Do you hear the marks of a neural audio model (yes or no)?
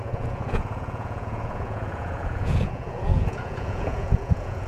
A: yes